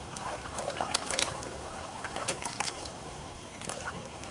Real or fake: fake